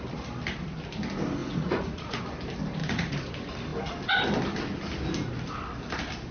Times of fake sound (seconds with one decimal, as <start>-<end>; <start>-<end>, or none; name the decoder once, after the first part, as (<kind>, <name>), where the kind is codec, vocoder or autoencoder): 1.4-2.2 (vocoder, Vocos); 2.8-3.3